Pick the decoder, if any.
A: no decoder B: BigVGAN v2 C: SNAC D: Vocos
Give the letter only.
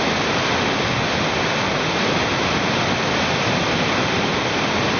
A